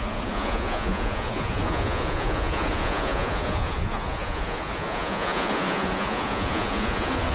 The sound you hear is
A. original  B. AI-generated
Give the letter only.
B